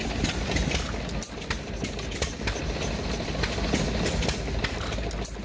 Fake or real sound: real